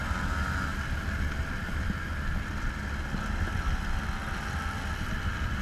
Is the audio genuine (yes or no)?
yes